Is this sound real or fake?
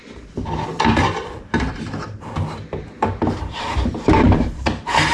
fake